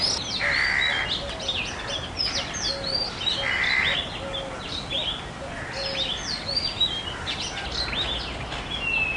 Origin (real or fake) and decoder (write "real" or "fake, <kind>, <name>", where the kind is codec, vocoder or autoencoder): real